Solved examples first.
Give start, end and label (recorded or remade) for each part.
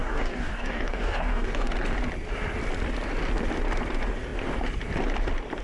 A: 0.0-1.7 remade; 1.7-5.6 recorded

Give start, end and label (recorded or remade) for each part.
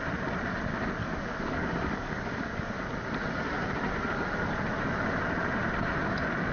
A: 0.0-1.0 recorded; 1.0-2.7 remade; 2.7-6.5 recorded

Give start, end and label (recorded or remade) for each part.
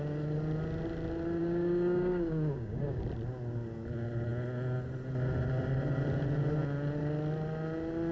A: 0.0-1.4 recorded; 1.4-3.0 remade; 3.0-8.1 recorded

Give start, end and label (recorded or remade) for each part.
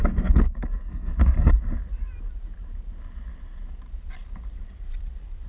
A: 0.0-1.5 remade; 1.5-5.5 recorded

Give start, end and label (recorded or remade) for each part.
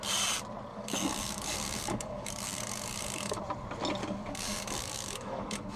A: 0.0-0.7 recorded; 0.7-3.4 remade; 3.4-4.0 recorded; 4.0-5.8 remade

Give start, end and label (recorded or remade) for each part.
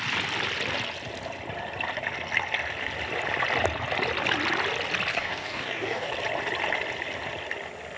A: 0.0-5.1 recorded; 5.1-6.1 remade; 6.1-8.0 recorded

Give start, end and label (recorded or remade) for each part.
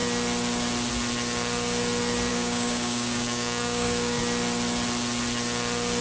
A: 0.0-2.3 recorded; 2.3-4.2 remade; 4.2-6.0 recorded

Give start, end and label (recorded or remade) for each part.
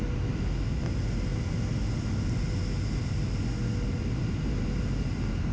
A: 0.0-5.5 recorded